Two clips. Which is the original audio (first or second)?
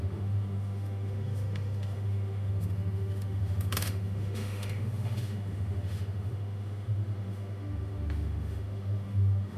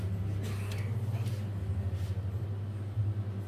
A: second